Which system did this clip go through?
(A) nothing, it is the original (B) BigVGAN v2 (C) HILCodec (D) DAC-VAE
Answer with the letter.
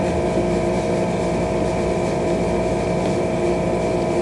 A